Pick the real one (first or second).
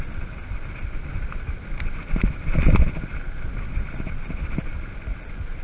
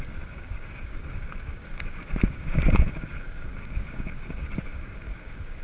first